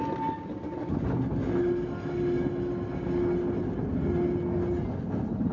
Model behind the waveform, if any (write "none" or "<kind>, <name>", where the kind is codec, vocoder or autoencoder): none